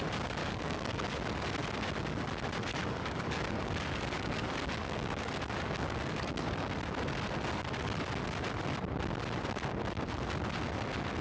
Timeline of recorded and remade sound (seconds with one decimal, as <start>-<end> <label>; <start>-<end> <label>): 0.0-0.4 recorded; 0.4-1.1 remade; 1.1-2.7 recorded; 2.7-6.8 remade; 6.8-11.2 recorded